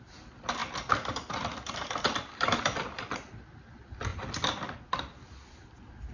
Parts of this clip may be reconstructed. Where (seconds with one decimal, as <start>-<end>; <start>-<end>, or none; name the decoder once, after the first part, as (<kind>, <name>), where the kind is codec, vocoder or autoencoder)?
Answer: none